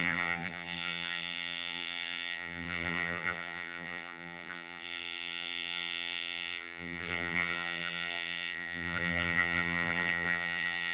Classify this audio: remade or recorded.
remade